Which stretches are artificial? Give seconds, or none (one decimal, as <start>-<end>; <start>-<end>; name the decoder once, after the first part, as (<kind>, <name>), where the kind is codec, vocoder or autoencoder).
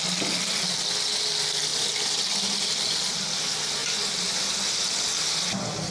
none